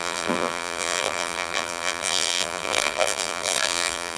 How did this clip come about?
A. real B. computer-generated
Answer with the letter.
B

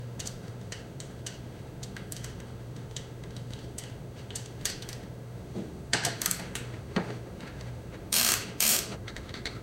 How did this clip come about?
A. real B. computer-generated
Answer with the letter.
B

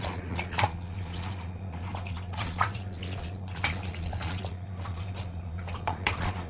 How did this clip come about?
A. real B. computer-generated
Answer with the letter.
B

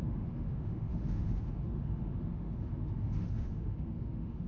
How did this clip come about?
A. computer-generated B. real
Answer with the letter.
A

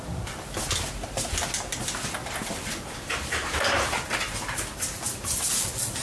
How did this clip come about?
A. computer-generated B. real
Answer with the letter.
B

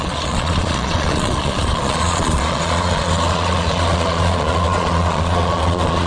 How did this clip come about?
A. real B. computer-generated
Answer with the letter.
B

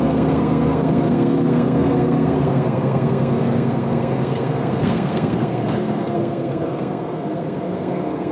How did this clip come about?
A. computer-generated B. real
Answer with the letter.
A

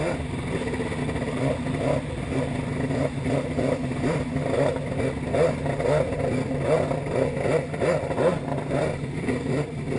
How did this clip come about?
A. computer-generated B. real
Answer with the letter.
B